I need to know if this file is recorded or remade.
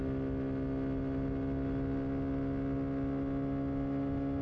recorded